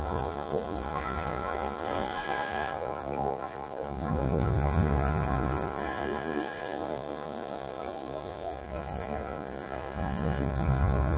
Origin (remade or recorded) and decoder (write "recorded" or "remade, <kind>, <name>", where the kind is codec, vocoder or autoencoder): remade, vocoder, Vocos